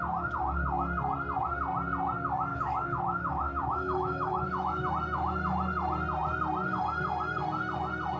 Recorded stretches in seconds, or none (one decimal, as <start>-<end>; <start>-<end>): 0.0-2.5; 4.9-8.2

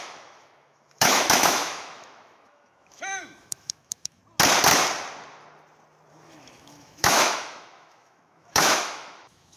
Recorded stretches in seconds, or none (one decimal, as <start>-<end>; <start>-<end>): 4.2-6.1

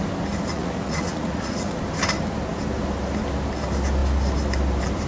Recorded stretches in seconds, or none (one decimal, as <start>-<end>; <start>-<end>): 0.0-0.5; 1.8-5.1

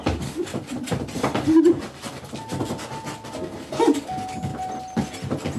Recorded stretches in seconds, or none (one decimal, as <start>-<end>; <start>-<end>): 0.5-3.9; 4.5-5.6

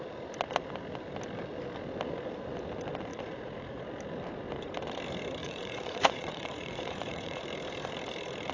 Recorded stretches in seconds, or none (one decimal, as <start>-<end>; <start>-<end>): 0.0-3.1; 3.8-5.4; 7.4-8.5

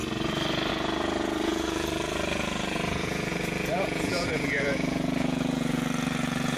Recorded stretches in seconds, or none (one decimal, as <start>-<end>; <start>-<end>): 0.0-0.7